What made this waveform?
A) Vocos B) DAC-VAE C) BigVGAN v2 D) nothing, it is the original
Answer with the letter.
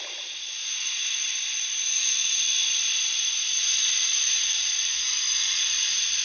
C